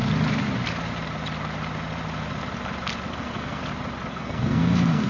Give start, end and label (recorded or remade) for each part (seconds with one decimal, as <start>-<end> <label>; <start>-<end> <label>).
0.0-3.1 recorded; 3.1-3.6 remade; 3.6-4.1 recorded; 4.1-5.1 remade

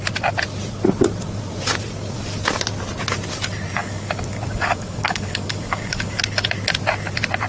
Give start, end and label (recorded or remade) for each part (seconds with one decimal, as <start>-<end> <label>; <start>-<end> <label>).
0.0-3.8 recorded; 3.8-6.2 remade; 6.2-7.5 recorded

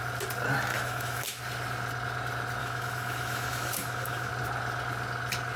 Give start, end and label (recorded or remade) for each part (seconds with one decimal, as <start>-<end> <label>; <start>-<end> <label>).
0.0-0.7 recorded; 0.7-1.4 remade; 1.4-2.6 recorded; 2.6-4.3 remade; 4.3-5.6 recorded

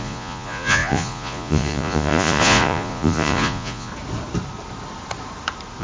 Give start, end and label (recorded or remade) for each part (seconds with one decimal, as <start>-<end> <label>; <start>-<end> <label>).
0.0-3.9 remade; 3.9-5.8 recorded

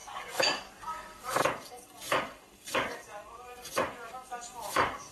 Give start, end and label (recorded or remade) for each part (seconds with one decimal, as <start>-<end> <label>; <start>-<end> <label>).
0.0-5.1 remade

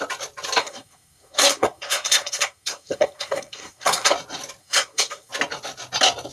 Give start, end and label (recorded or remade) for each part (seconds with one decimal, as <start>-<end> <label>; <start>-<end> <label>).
0.0-0.6 recorded; 0.6-4.1 remade; 4.1-4.6 recorded; 4.6-5.3 remade; 5.3-6.3 recorded

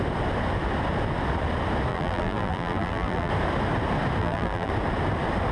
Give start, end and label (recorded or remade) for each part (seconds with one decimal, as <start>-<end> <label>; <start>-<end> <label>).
0.0-1.9 recorded; 1.9-3.3 remade; 3.3-4.2 recorded; 4.2-4.7 remade; 4.7-5.5 recorded

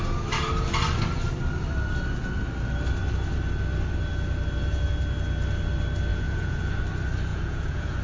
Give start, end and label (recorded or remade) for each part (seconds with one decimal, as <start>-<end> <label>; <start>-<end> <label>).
0.0-6.1 recorded; 6.1-6.8 remade; 6.8-7.3 recorded; 7.3-8.0 remade